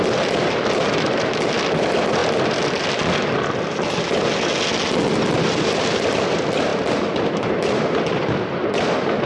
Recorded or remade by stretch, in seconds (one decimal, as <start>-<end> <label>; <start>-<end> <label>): 0.0-9.3 recorded